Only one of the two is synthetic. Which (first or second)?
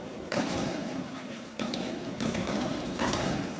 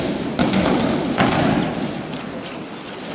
first